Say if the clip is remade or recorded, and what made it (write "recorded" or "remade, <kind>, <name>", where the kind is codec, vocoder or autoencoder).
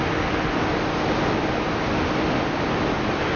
recorded